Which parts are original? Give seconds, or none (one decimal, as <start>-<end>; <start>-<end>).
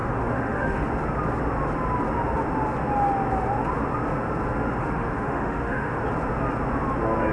0.9-4.8; 6.0-7.3